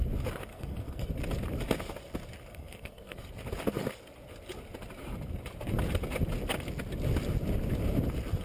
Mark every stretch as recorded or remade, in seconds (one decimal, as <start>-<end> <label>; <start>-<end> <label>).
0.0-0.5 recorded; 0.5-1.1 remade; 1.1-2.5 recorded; 2.5-3.3 remade; 3.3-8.4 recorded